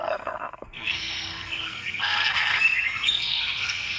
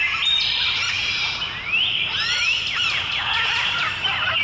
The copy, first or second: first